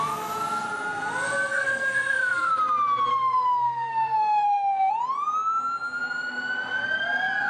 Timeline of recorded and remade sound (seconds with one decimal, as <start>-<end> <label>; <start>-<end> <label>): 0.0-1.5 recorded; 1.5-2.5 remade; 2.5-3.1 recorded; 3.1-4.9 remade; 4.9-7.5 recorded